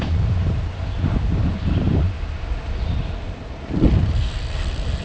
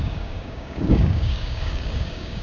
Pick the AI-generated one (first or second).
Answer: second